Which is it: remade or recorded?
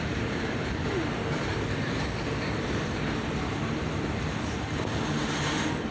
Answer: remade